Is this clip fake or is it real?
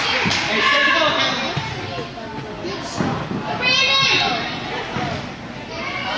real